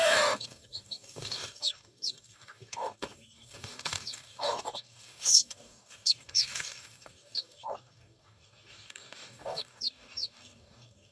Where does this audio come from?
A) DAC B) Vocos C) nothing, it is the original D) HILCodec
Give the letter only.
A